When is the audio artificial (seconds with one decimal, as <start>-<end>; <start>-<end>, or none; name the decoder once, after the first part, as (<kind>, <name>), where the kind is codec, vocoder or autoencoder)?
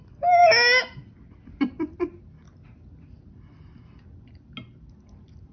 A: none